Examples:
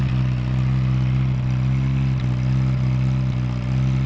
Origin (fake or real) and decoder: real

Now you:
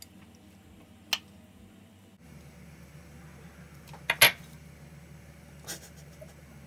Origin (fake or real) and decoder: real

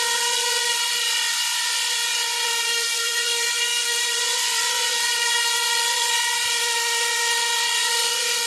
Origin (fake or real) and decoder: fake, vocoder, Vocos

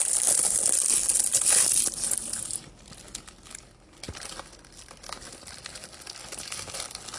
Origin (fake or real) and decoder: real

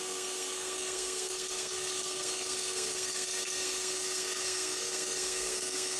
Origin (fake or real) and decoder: fake, codec, SNAC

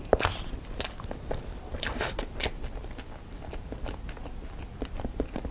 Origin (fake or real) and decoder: real